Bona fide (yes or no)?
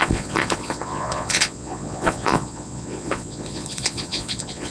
no